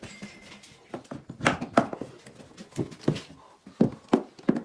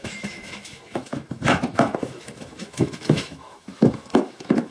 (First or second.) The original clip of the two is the first